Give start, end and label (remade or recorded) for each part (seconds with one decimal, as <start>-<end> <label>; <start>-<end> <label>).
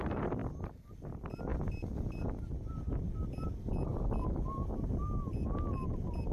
0.0-6.3 recorded